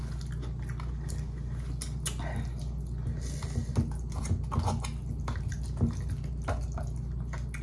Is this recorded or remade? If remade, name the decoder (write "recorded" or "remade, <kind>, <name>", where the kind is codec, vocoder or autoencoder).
recorded